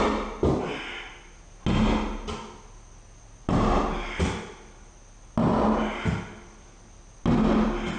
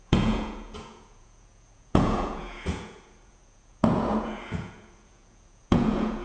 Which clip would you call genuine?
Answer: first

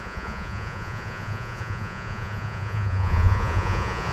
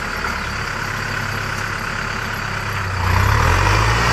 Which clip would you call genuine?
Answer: second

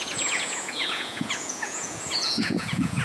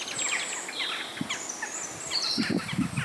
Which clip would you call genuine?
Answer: second